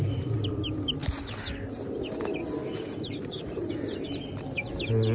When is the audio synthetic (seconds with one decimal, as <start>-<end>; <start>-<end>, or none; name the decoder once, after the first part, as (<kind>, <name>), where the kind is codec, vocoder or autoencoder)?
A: 2.6-3.7 (vocoder, BigVGAN v2)